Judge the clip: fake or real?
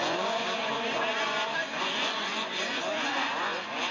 fake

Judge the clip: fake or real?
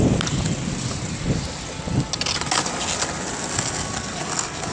real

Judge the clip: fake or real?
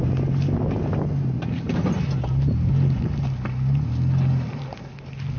real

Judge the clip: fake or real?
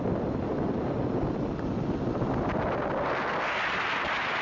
real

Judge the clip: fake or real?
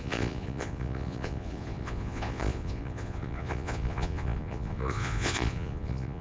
fake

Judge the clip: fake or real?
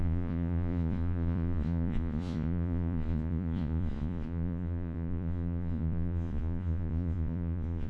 fake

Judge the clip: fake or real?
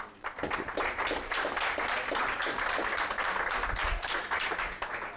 real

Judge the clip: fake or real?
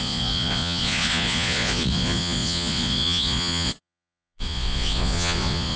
fake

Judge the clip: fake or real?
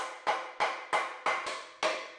real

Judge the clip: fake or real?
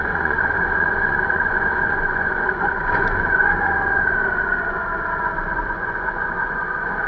fake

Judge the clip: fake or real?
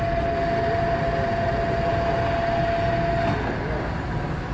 real